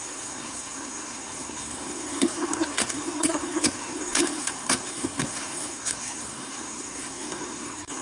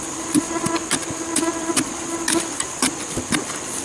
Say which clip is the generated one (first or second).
first